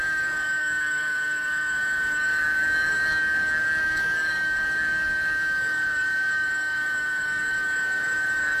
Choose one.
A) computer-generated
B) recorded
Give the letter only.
A